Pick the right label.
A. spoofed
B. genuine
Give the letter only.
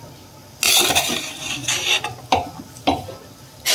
B